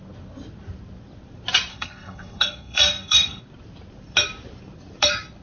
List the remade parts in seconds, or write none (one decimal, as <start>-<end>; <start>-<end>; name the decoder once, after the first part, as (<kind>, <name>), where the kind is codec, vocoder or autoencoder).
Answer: 1.7-3.4 (codec, SNAC)